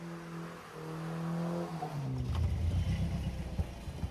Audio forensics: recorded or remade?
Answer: recorded